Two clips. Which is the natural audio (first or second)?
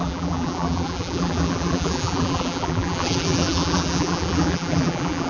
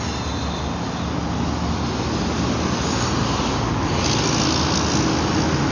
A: second